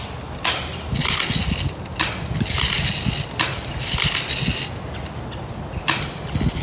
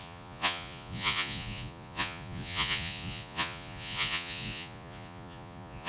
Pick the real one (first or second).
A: first